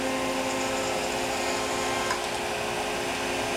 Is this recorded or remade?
recorded